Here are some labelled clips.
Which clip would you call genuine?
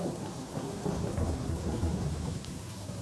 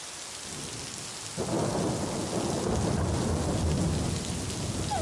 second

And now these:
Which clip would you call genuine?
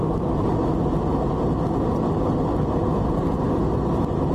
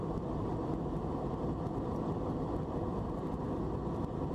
first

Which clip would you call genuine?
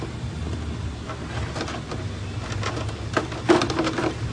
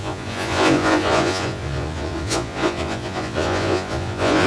first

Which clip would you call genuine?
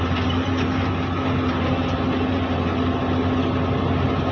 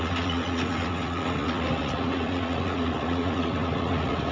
first